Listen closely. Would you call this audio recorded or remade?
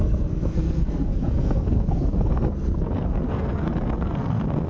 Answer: remade